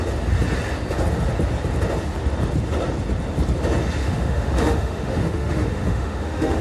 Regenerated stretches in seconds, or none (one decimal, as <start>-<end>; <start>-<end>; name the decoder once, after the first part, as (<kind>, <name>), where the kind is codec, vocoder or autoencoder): 4.0-6.6 (autoencoder, DAC-VAE)